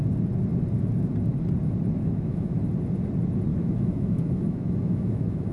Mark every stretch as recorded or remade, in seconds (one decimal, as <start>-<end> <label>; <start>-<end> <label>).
0.0-2.0 recorded; 2.0-2.6 remade; 2.6-3.5 recorded; 3.5-5.5 remade